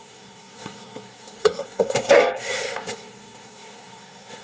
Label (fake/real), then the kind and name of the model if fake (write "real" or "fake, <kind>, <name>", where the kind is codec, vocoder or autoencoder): fake, codec, SNAC